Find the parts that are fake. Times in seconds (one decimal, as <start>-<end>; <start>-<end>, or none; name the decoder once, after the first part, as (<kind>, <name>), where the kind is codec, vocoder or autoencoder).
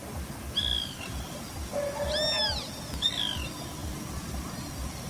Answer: none